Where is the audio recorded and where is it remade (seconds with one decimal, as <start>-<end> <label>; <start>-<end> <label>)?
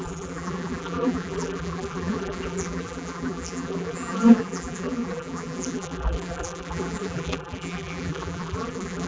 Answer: 0.0-9.1 remade